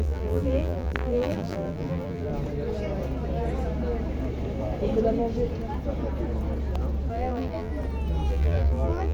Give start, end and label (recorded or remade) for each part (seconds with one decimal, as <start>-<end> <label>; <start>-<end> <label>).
0.0-2.3 remade; 2.3-7.1 recorded; 7.1-7.7 remade; 7.7-8.3 recorded; 8.3-9.1 remade